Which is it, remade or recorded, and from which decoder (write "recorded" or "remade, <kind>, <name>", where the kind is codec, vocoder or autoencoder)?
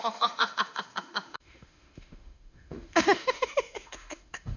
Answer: remade, autoencoder, DAC-VAE